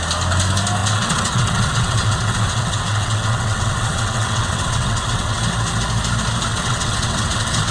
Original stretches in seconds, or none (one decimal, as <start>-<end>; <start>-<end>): 0.0-0.8; 5.4-6.5